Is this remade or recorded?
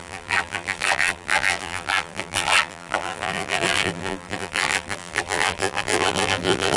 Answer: remade